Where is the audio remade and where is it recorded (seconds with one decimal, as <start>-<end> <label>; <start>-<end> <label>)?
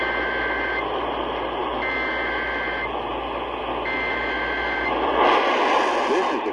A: 0.0-6.5 recorded